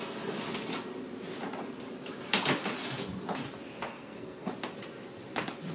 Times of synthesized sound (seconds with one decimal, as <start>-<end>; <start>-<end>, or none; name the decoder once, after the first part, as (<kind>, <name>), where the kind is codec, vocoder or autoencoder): 3.9-4.5 (codec, SNAC)